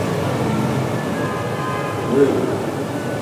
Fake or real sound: real